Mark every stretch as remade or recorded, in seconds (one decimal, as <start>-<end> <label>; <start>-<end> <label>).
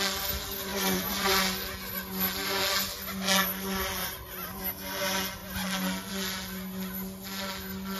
0.0-0.7 recorded; 0.7-1.3 remade; 1.3-4.0 recorded; 4.0-4.6 remade; 4.6-8.0 recorded